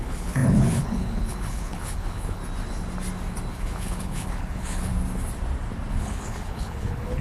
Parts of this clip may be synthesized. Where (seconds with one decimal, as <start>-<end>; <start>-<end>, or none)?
0.0-2.4; 3.5-4.9; 5.9-7.2